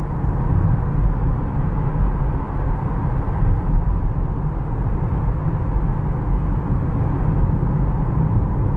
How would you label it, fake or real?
real